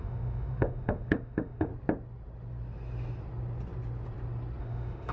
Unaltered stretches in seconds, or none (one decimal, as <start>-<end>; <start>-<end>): 1.7-4.6